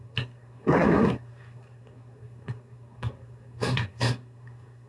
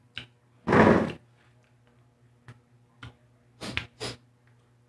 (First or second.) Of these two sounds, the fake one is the first